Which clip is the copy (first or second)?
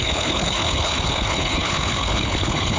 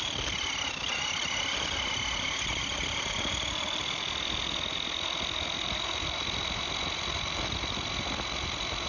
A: first